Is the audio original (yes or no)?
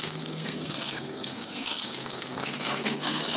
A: no